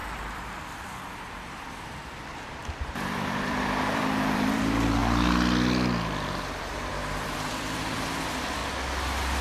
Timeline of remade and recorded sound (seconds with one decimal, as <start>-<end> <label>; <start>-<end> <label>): 0.0-5.0 remade; 5.0-6.6 recorded; 6.6-8.6 remade; 8.6-9.4 recorded